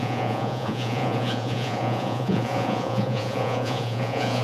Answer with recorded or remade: remade